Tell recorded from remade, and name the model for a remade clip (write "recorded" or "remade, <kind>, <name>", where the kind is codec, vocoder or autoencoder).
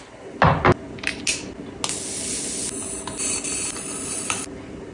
recorded